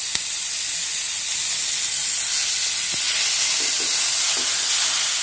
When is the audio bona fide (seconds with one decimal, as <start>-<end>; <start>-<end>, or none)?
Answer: 0.0-5.2